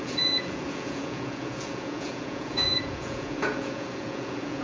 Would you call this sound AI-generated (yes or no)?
yes